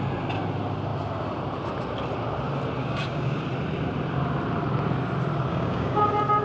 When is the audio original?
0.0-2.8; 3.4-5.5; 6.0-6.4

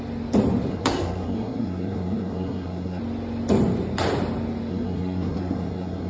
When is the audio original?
0.0-0.7; 3.0-4.7

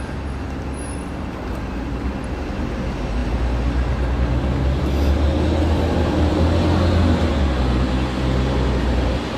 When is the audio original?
0.0-9.4

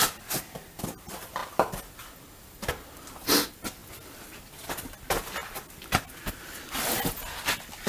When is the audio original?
0.0-7.9